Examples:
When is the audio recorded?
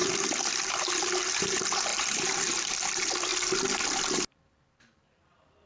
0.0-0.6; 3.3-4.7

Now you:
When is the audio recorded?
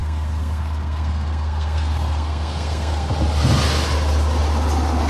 3.1-5.1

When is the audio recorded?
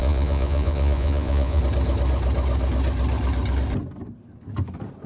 1.6-5.1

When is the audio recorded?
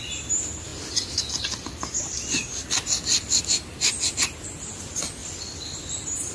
0.7-2.0; 2.4-4.7